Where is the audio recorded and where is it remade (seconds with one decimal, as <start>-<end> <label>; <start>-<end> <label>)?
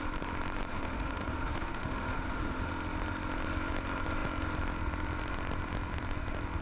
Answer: 0.0-0.7 recorded; 0.7-2.7 remade; 2.7-6.6 recorded